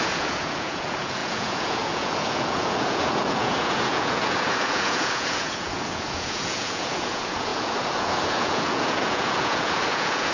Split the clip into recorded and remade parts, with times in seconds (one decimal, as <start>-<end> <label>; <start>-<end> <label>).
0.0-10.3 remade